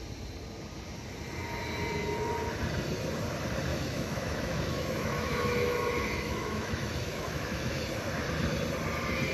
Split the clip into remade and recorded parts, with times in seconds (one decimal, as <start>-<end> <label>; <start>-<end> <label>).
0.0-3.7 recorded; 3.7-7.8 remade; 7.8-9.3 recorded